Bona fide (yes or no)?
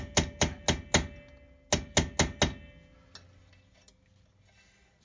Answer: yes